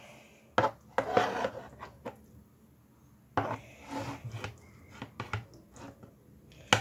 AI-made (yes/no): no